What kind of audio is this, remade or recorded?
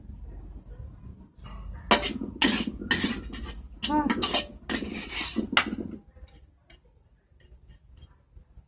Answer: recorded